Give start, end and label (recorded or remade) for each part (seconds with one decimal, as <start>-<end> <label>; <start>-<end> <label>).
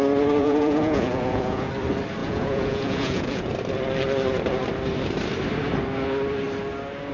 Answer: 0.0-0.4 recorded; 0.4-1.7 remade; 1.7-2.2 recorded; 2.2-3.5 remade; 3.5-7.1 recorded